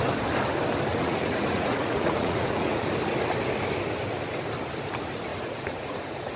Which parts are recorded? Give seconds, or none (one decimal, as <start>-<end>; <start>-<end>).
0.0-0.9; 2.8-5.3